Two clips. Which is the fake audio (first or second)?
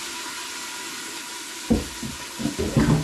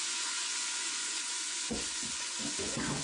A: second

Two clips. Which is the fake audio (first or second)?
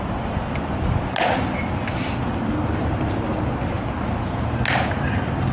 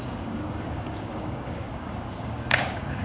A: second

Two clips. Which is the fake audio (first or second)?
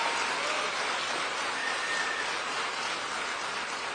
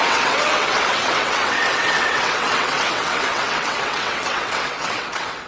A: second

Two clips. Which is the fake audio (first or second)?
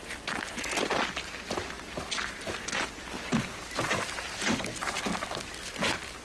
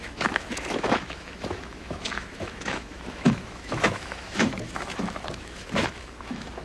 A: second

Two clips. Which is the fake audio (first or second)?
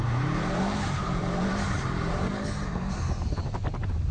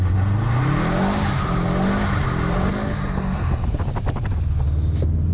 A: first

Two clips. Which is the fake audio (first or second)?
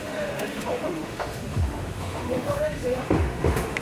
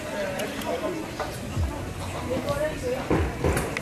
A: first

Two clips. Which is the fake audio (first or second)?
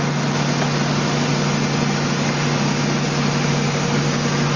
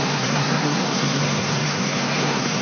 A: second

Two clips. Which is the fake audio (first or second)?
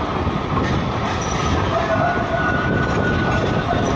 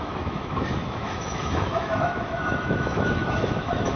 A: second